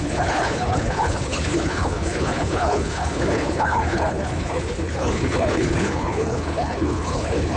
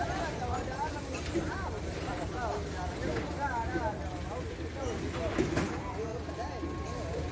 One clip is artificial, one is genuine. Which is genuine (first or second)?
second